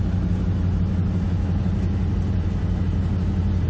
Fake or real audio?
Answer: real